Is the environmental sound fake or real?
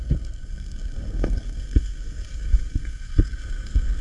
fake